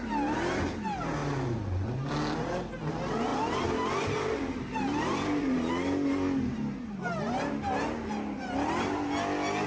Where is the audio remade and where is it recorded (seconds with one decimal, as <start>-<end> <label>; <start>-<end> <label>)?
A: 0.0-1.2 recorded; 1.2-2.1 remade; 2.1-3.3 recorded; 3.3-5.7 remade; 5.7-9.7 recorded